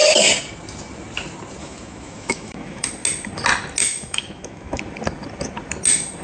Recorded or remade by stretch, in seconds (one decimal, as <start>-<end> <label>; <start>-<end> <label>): 0.0-1.6 recorded; 1.6-2.9 remade; 2.9-3.8 recorded; 3.8-4.8 remade; 4.8-6.2 recorded